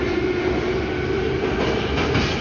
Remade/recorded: recorded